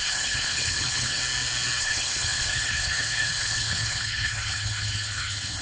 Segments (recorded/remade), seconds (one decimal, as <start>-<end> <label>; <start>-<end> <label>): 0.0-1.2 remade; 1.2-1.8 recorded; 1.8-5.6 remade